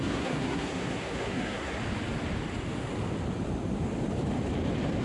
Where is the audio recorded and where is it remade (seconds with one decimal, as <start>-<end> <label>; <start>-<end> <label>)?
0.0-1.8 remade; 1.8-5.0 recorded